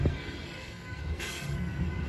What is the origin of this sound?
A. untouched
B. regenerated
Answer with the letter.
B